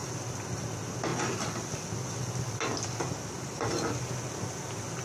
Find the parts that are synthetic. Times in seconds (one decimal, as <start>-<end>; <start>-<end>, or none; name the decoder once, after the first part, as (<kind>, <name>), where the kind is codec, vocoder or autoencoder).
0.0-0.6 (vocoder, BigVGAN v2)